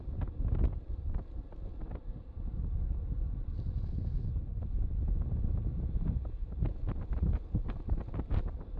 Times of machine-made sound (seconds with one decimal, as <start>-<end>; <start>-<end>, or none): none